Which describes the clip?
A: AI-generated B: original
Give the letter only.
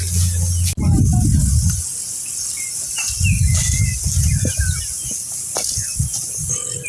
B